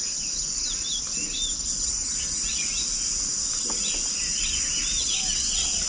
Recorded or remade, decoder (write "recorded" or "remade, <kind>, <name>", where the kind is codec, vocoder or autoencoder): recorded